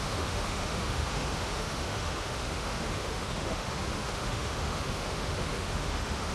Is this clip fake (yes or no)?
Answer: yes